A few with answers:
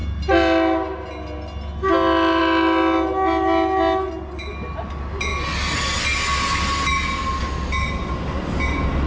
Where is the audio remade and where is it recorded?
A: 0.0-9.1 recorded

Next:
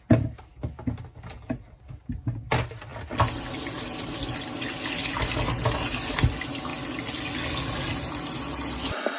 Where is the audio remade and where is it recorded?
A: 0.0-9.2 recorded

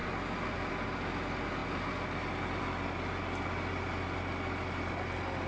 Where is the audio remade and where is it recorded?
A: 0.0-5.5 recorded

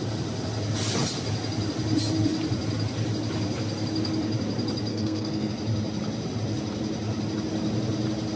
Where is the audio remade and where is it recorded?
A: 0.0-4.9 recorded; 4.9-5.5 remade; 5.5-8.4 recorded

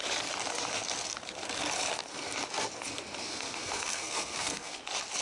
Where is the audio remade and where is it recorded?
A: 0.0-3.2 recorded; 3.2-4.8 remade; 4.8-5.2 recorded

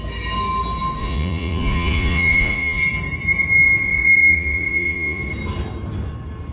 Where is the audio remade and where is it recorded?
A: 0.0-1.0 recorded; 1.0-2.8 remade; 2.8-3.9 recorded; 3.9-5.2 remade; 5.2-6.5 recorded

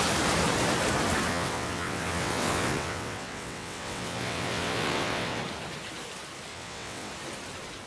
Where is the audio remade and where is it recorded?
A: 0.0-1.3 recorded; 1.3-5.4 remade; 5.4-6.5 recorded; 6.5-7.1 remade; 7.1-7.9 recorded